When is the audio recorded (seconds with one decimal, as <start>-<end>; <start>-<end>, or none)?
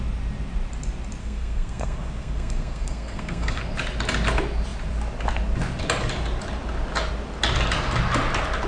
0.0-1.2; 3.6-8.7